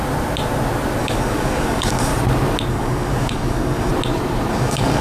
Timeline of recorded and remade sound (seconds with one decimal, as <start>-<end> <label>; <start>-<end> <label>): 0.0-1.0 recorded; 1.0-2.1 remade; 2.1-2.7 recorded; 2.7-3.9 remade; 3.9-4.5 recorded; 4.5-5.0 remade